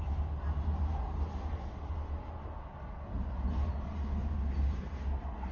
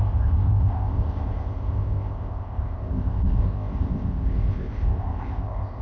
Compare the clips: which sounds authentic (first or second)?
first